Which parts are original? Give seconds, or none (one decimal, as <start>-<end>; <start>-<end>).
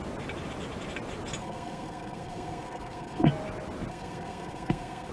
0.0-1.4; 3.3-3.9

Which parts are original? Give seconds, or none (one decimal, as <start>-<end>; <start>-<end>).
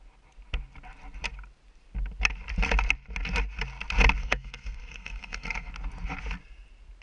0.0-4.2; 5.7-7.0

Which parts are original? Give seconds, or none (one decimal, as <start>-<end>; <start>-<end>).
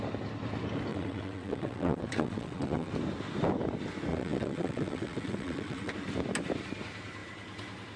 0.0-0.9; 2.9-4.1; 5.9-8.0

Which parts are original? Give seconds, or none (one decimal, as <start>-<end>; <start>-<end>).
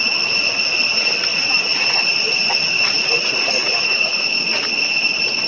0.0-1.3; 4.6-5.5